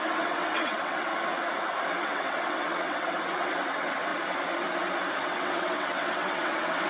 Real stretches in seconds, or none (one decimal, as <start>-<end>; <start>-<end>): 1.1-2.0; 4.1-5.2